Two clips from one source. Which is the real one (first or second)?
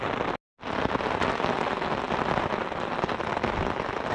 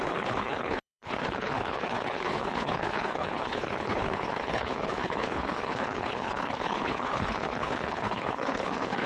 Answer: first